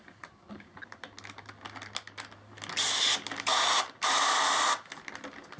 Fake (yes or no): no